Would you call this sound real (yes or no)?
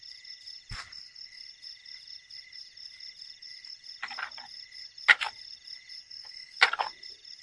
yes